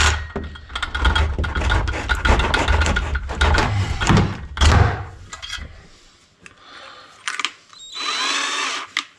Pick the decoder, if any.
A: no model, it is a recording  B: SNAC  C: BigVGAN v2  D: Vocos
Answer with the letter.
A